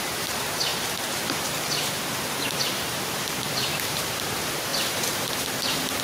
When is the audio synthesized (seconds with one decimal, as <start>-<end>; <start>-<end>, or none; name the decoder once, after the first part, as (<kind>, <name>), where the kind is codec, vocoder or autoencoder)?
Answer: 0.0-0.7 (vocoder, BigVGAN v2); 2.3-4.7; 5.3-6.0